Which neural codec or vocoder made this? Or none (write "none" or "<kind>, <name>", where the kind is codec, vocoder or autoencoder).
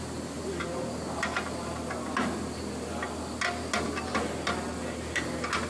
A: none